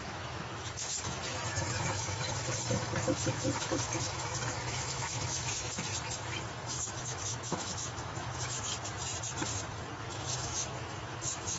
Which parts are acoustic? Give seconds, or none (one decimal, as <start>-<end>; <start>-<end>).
5.9-6.7; 8.7-10.0